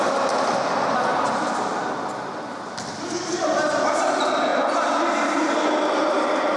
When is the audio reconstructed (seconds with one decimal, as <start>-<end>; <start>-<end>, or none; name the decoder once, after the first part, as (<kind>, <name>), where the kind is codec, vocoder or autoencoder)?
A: none